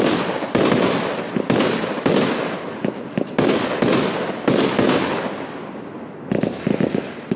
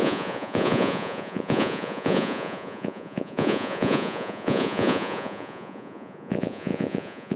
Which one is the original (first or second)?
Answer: first